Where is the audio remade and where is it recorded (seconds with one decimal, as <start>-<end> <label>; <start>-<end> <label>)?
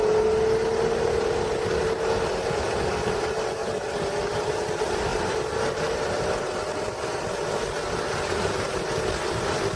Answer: 0.0-3.6 recorded; 3.6-4.1 remade; 4.1-5.1 recorded; 5.1-6.9 remade; 6.9-9.8 recorded